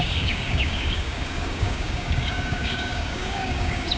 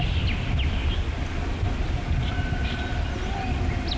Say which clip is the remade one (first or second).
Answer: first